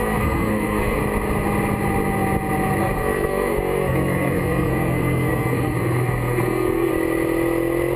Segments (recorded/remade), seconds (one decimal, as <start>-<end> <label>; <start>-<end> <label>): 0.0-1.0 remade; 1.0-2.8 recorded; 2.8-6.9 remade; 6.9-8.0 recorded